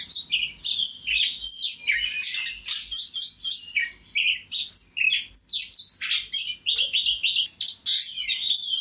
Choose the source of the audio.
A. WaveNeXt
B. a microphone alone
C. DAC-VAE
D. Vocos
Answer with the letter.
B